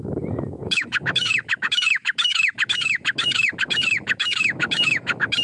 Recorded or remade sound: remade